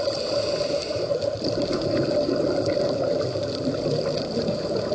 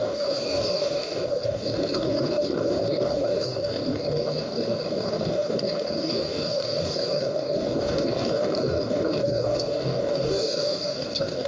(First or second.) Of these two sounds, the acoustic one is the first